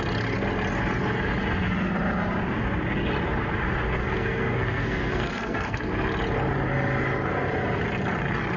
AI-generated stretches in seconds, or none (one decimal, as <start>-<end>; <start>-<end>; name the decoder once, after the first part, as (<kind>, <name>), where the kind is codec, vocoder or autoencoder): 4.0-5.8 (codec, SNAC)